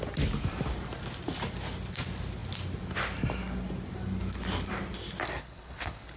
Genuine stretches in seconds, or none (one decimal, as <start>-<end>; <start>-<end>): 0.0-5.4